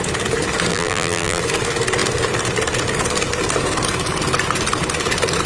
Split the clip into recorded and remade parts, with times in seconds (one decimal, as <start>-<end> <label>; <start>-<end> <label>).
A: 0.0-0.7 recorded; 0.7-1.4 remade; 1.4-5.5 recorded